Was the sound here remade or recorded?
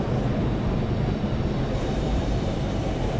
remade